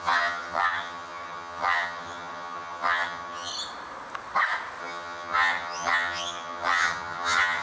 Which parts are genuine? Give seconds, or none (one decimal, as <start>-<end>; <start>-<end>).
3.5-4.8